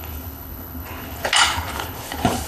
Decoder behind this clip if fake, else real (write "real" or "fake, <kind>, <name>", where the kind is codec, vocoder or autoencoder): fake, codec, HILCodec